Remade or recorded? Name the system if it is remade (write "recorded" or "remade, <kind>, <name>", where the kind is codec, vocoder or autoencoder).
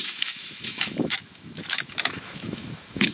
remade, autoencoder, DAC-VAE